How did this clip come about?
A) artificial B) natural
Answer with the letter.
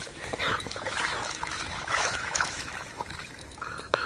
A